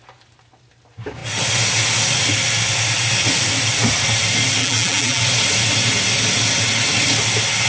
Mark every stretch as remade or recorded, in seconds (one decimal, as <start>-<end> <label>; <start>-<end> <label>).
0.0-4.6 recorded; 4.6-5.2 remade; 5.2-7.7 recorded